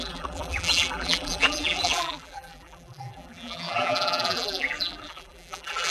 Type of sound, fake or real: fake